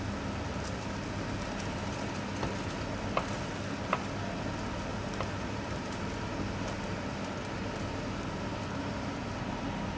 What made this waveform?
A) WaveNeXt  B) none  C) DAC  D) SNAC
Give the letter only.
B